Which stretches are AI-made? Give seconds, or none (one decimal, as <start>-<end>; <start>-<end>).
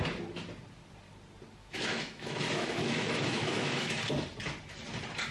1.6-3.9